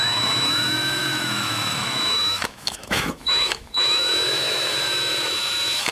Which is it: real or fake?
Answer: fake